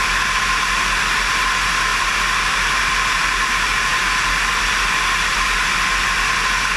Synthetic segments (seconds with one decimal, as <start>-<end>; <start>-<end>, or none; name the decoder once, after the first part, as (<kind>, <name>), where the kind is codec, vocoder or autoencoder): none